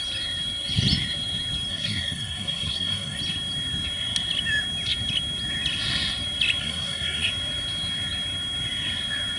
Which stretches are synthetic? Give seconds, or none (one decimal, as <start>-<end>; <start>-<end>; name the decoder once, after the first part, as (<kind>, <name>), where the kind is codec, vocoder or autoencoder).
1.7-3.2 (codec, SNAC); 6.6-7.3